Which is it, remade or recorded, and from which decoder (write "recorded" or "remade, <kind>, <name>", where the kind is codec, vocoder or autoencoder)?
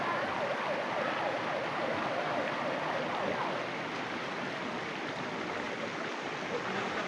recorded